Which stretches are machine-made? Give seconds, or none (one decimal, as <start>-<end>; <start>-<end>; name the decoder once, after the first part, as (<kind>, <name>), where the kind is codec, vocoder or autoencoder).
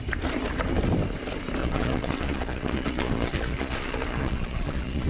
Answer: 1.6-5.1 (vocoder, Vocos)